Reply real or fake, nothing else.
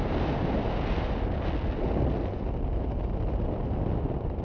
real